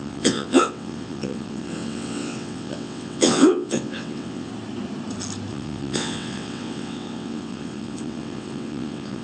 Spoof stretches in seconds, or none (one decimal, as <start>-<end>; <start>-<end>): 0.0-4.5; 5.5-9.2